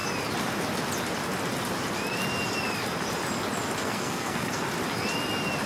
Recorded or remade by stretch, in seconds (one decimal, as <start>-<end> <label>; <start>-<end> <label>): 0.0-3.8 recorded; 3.8-4.7 remade; 4.7-5.7 recorded